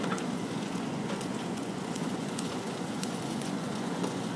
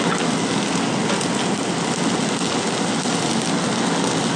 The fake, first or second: first